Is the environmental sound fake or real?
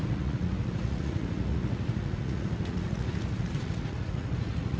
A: fake